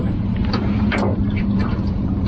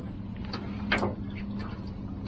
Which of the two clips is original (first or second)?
second